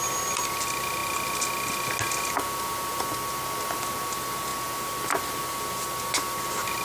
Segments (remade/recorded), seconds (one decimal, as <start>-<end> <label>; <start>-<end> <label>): 0.0-6.8 recorded